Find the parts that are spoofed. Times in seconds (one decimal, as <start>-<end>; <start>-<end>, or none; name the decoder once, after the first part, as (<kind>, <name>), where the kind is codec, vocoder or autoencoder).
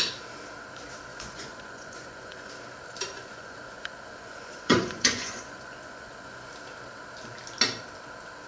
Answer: 1.1-2.5 (vocoder, Vocos); 3.1-6.5